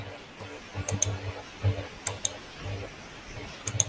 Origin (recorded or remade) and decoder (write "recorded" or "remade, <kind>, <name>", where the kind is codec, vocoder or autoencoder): recorded